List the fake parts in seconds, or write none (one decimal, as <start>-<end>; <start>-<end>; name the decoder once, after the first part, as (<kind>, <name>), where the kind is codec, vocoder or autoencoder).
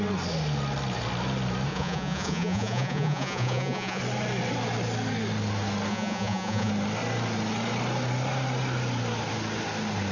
1.7-4.0 (vocoder, Vocos); 5.9-6.7